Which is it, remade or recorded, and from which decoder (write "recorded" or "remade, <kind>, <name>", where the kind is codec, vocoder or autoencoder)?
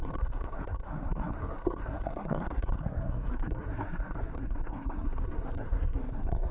remade, codec, SNAC